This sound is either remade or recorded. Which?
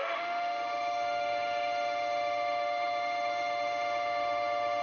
remade